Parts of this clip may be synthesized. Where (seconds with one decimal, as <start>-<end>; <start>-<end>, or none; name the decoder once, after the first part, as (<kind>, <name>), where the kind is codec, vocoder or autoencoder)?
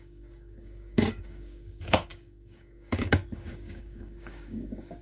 0.0-5.0 (codec, DAC)